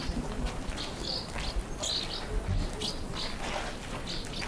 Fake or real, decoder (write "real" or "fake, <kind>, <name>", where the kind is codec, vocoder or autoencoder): real